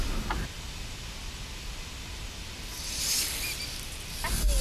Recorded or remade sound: recorded